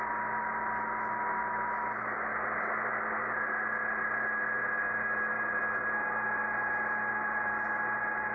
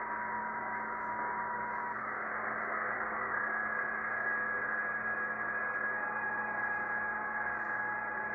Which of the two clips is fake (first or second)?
second